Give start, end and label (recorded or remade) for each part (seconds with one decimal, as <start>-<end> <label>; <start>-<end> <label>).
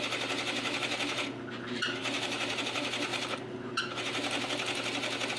0.0-2.0 recorded; 2.0-2.6 remade; 2.6-3.1 recorded; 3.1-3.8 remade; 3.8-5.4 recorded